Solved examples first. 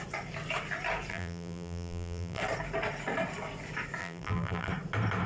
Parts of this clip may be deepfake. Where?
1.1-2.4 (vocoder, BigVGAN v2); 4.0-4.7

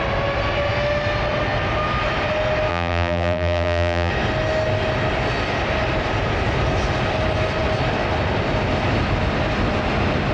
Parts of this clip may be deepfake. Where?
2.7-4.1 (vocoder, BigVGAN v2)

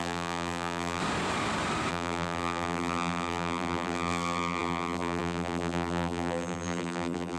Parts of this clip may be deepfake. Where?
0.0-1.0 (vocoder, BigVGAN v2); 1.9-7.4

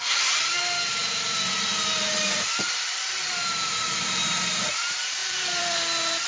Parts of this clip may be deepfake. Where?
0.0-6.3 (vocoder, BigVGAN v2)